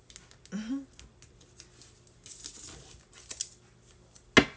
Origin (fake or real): real